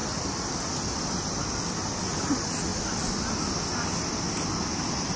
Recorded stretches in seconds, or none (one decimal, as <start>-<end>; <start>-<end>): 0.0-5.2